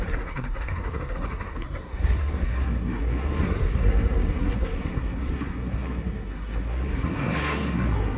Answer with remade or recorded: remade